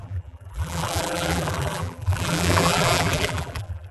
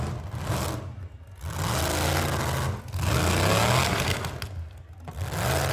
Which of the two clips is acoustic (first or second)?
second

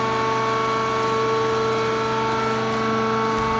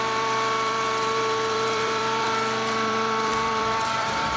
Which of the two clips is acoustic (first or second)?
first